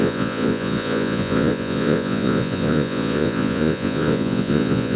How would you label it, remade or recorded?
remade